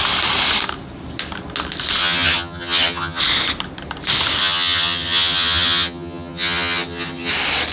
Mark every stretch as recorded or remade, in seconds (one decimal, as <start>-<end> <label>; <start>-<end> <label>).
0.0-2.0 recorded; 2.0-3.2 remade; 3.2-4.4 recorded; 4.4-7.3 remade; 7.3-7.7 recorded